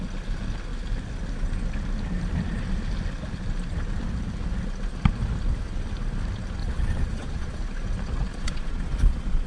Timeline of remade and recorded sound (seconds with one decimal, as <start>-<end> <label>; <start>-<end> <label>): 0.0-6.6 recorded; 6.6-7.6 remade; 7.6-8.3 recorded; 8.3-9.5 remade